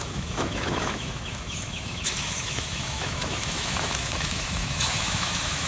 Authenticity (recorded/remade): remade